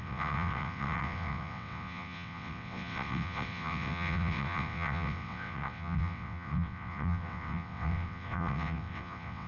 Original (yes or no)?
no